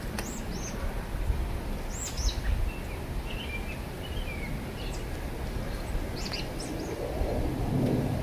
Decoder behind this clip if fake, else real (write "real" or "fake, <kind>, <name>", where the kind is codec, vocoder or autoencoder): real